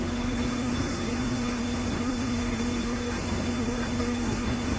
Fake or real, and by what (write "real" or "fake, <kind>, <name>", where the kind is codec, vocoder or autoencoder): fake, codec, SNAC